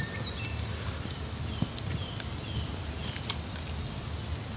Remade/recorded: recorded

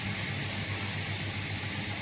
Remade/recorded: recorded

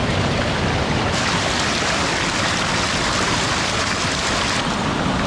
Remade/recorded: recorded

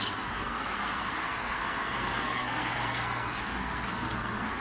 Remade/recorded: remade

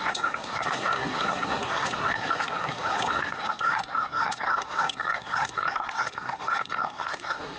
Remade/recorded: remade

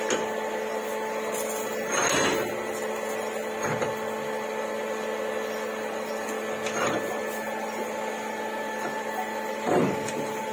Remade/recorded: recorded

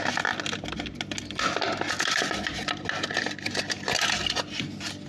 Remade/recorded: recorded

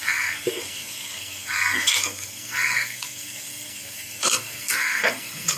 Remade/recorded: remade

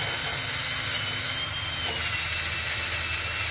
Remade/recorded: recorded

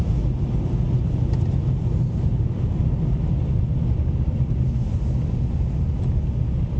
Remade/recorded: recorded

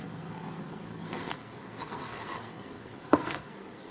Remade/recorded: remade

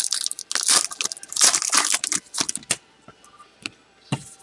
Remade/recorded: recorded